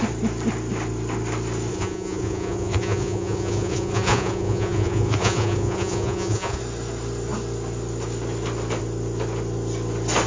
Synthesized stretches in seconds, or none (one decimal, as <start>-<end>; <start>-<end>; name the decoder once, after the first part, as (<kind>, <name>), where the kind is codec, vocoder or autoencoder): 1.7-6.6 (vocoder, Vocos)